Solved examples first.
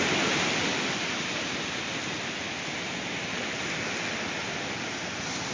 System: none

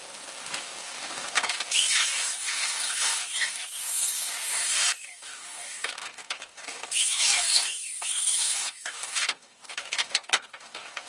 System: codec, DAC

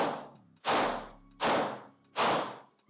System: none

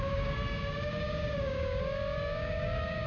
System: codec, DAC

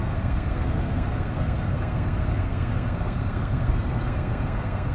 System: codec, SNAC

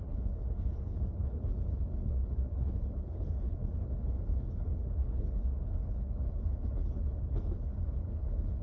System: codec, HILCodec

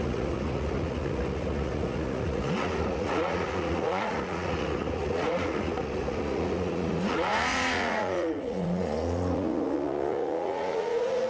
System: vocoder, Vocos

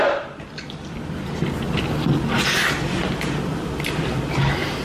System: none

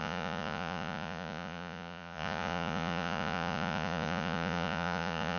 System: vocoder, Vocos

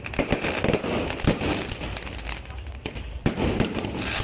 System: none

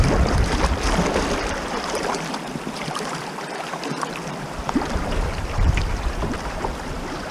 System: vocoder, BigVGAN v2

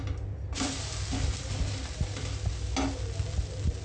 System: none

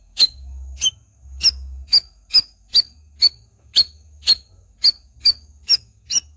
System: autoencoder, DAC-VAE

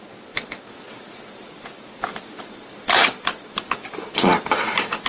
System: vocoder, BigVGAN v2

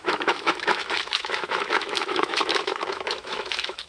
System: autoencoder, DAC-VAE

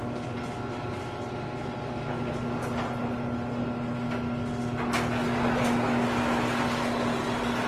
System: none